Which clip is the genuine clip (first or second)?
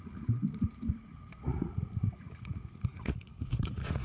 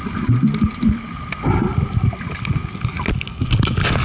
second